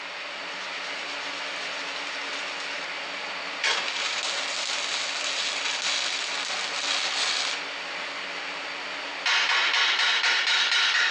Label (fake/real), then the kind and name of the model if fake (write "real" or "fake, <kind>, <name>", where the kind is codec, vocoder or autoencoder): real